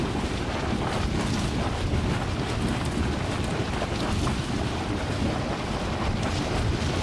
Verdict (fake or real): real